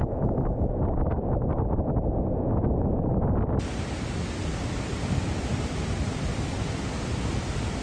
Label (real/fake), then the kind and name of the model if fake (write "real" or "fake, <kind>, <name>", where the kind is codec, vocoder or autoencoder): real